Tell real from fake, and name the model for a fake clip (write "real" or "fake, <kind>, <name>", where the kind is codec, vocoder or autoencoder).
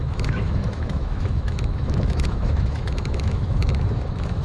fake, autoencoder, DAC-VAE